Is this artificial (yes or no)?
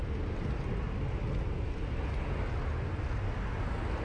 no